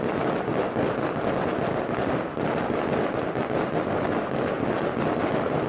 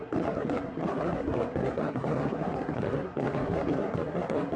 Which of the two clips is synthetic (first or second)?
second